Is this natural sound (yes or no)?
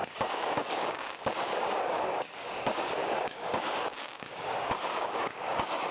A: no